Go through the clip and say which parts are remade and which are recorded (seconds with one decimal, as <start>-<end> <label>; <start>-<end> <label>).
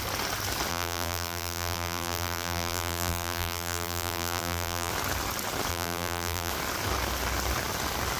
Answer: 0.0-0.7 recorded; 0.7-4.9 remade; 4.9-5.7 recorded; 5.7-6.5 remade; 6.5-8.2 recorded